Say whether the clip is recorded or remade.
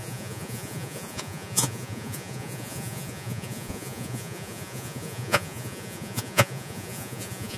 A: remade